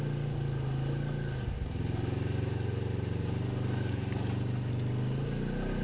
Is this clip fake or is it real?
real